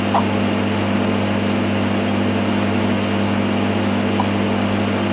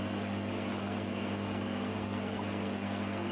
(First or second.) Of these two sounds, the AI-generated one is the second